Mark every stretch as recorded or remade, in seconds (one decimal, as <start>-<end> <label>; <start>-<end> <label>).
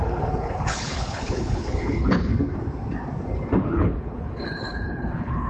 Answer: 0.0-2.3 remade; 2.3-3.6 recorded; 3.6-5.5 remade